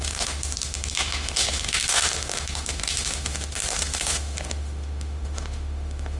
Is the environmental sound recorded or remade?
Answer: remade